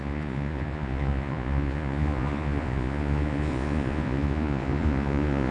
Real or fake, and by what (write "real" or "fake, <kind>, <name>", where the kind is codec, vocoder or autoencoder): fake, vocoder, Vocos